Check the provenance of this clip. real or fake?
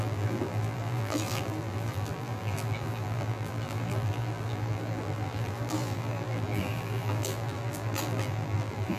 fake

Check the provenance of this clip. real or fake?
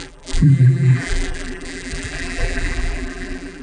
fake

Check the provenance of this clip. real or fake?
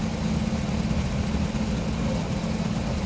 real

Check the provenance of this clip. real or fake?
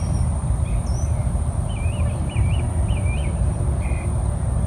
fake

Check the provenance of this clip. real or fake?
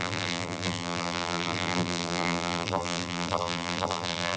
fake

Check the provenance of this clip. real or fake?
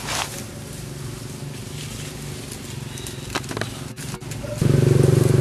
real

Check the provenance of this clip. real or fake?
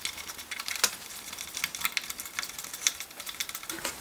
real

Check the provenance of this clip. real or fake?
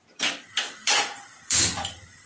fake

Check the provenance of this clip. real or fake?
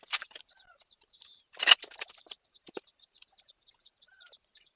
fake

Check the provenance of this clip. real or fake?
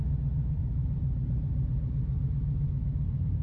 fake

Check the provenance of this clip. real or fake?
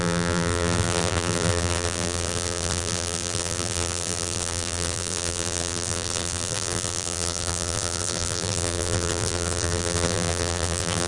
fake